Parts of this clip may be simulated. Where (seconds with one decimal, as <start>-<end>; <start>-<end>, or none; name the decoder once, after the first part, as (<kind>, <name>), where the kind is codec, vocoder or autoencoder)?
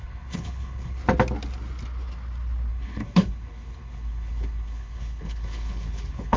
0.0-1.0 (codec, HILCodec); 2.7-6.4